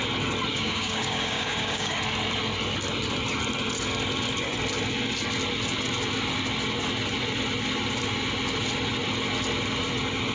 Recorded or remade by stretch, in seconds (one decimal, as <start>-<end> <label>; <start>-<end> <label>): 0.0-0.5 recorded; 0.5-1.9 remade; 1.9-10.3 recorded